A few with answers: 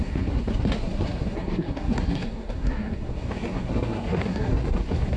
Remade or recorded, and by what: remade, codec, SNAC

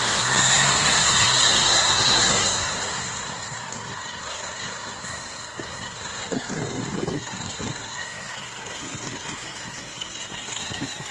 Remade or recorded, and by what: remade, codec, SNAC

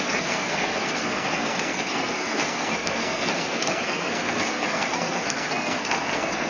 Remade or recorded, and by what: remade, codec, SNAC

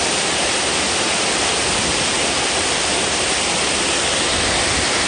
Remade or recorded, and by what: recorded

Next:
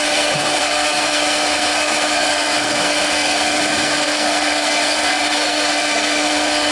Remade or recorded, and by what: remade, codec, SNAC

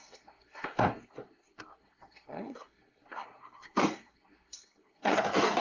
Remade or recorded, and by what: remade, codec, SNAC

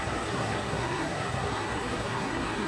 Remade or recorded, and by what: remade, codec, SNAC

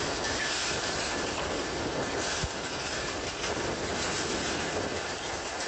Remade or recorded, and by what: recorded